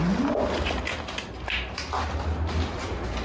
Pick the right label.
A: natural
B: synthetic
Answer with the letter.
A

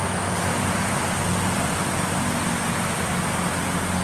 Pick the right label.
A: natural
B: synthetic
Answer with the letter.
A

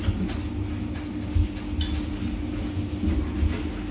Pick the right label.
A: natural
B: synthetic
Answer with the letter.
A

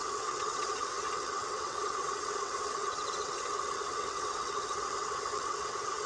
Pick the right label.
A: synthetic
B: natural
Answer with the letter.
A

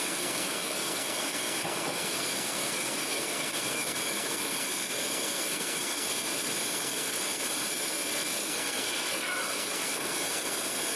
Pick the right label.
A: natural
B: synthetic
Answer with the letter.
B